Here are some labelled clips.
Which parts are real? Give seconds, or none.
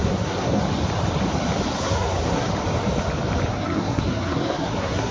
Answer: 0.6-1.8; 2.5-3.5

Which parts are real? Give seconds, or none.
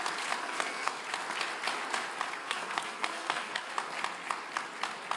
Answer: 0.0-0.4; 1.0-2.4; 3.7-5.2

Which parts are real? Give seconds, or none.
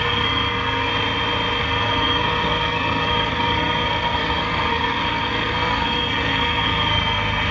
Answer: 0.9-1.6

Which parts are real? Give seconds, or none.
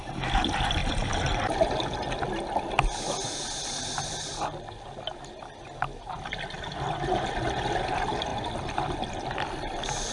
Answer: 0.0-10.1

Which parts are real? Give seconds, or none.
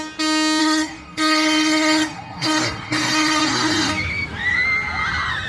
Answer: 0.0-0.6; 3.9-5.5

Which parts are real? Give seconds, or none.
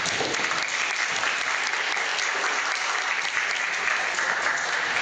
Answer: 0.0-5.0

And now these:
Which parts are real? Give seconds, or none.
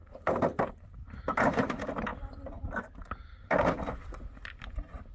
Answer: 0.0-5.1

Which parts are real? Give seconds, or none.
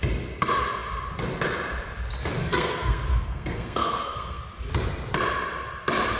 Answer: 0.0-2.4; 4.4-6.2